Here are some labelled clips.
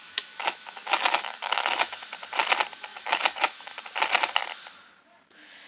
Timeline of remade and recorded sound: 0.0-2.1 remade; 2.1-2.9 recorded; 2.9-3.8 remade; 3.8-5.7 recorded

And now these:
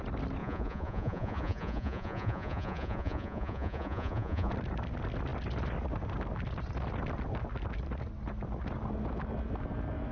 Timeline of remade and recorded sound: 0.0-0.4 recorded; 0.4-4.5 remade; 4.5-10.1 recorded

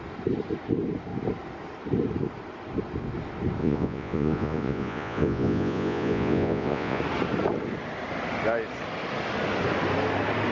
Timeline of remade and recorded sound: 0.0-3.6 recorded; 3.6-7.0 remade; 7.0-10.5 recorded